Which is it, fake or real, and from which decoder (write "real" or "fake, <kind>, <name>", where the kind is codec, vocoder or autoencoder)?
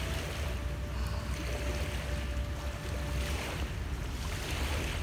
real